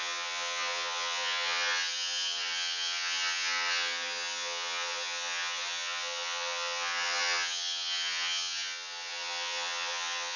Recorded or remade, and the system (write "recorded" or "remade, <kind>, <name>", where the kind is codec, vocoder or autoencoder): remade, vocoder, HiFi-GAN